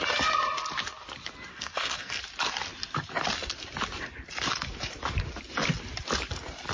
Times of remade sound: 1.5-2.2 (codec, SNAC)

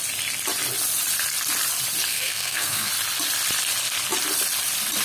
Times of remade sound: 2.1-2.9 (codec, SNAC)

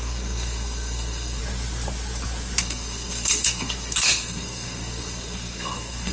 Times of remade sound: 0.0-1.4 (codec, SNAC); 2.6-6.1

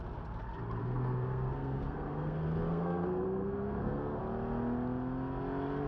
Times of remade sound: 0.8-4.2 (codec, SNAC)

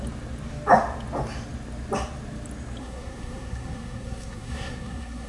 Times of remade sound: 2.8-5.3 (codec, SNAC)

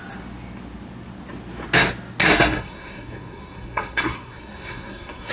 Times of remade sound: 2.2-5.3 (codec, SNAC)

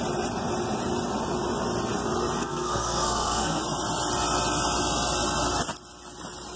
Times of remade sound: 2.4-3.6 (codec, SNAC)

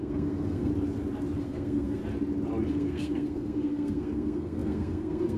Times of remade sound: 0.0-0.7 (codec, SNAC); 1.4-2.0; 2.7-5.4